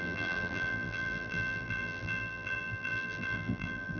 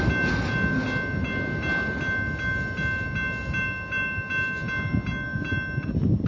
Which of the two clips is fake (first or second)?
first